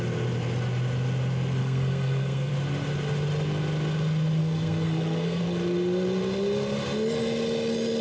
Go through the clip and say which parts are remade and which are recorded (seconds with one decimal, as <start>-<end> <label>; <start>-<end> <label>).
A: 0.0-1.6 recorded; 1.6-2.5 remade; 2.5-4.4 recorded; 4.4-5.4 remade; 5.4-8.0 recorded